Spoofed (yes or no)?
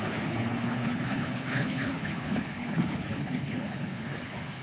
yes